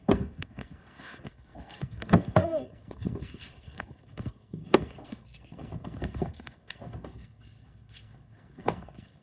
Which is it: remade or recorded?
remade